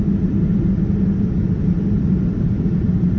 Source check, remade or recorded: recorded